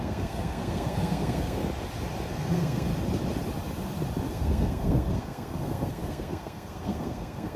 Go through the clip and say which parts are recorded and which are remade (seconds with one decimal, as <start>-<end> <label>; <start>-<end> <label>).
0.0-1.6 remade; 1.6-2.3 recorded; 2.3-2.9 remade; 2.9-4.3 recorded; 4.3-7.6 remade